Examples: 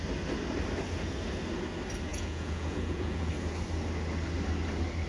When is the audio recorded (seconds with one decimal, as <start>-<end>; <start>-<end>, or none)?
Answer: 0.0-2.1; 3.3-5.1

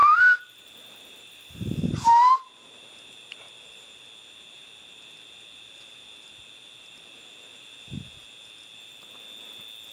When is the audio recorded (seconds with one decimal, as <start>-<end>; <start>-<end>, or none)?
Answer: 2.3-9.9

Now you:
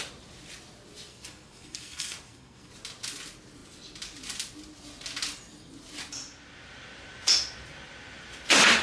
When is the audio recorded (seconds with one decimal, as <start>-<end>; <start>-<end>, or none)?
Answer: 0.0-1.1; 2.7-8.8